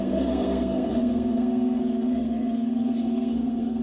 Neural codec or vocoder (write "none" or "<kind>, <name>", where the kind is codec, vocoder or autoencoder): codec, SNAC